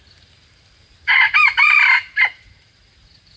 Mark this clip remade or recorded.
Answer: remade